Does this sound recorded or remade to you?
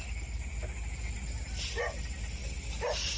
recorded